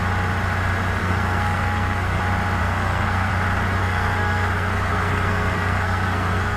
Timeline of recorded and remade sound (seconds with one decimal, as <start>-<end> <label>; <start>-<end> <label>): 0.0-1.0 recorded; 1.0-2.2 remade; 2.2-2.6 recorded; 2.6-3.3 remade; 3.3-3.8 recorded; 3.8-6.6 remade